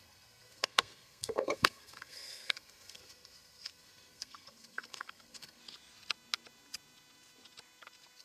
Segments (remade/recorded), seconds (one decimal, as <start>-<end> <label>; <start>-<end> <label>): 0.0-5.6 remade; 5.6-8.2 recorded